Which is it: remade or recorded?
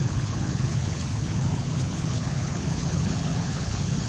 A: remade